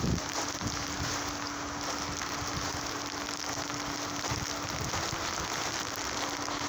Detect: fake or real real